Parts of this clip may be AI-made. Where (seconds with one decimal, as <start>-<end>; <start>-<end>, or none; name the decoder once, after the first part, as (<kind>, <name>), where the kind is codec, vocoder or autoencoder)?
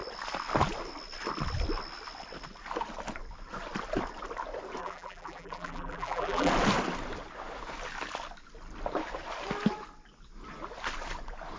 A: 4.8-6.5 (vocoder, BigVGAN v2)